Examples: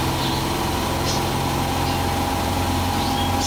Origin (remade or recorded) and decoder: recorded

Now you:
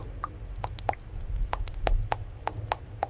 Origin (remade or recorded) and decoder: recorded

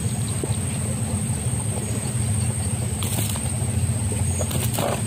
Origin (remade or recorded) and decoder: recorded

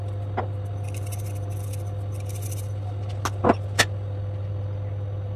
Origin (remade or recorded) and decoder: recorded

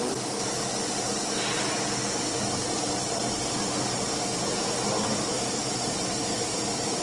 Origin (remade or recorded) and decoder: recorded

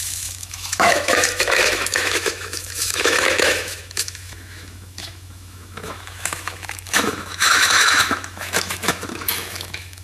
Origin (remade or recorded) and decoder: remade, autoencoder, DAC-VAE